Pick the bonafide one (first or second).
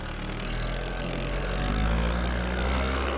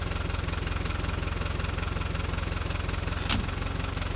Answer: second